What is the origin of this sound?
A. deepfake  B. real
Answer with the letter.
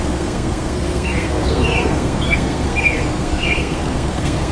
A